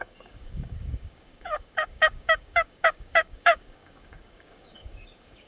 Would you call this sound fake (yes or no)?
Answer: yes